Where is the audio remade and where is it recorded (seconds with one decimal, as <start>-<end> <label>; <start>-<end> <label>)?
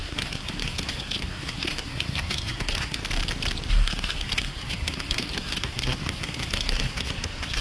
0.0-3.0 remade; 3.0-3.7 recorded; 3.7-7.6 remade